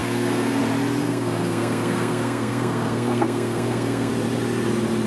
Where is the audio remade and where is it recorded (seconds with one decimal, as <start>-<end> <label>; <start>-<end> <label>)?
0.0-0.6 remade; 0.6-1.0 recorded; 1.0-4.1 remade; 4.1-5.1 recorded